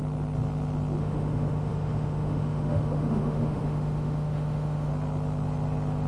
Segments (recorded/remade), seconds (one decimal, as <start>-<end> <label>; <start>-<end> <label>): 0.0-1.0 recorded; 1.0-4.9 remade; 4.9-6.1 recorded